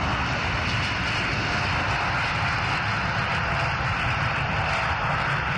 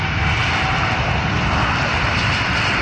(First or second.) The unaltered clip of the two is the first